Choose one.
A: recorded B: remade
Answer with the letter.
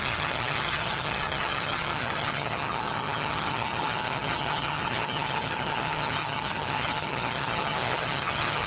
B